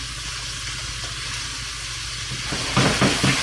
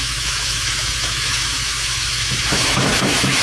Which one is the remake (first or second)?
second